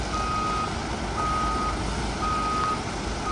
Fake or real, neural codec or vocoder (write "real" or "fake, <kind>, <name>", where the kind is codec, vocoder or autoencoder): real